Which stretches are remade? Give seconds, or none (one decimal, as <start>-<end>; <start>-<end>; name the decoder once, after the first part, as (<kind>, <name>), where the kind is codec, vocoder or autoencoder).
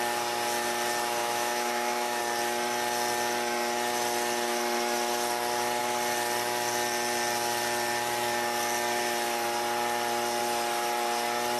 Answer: 1.2-2.2 (autoencoder, DAC-VAE)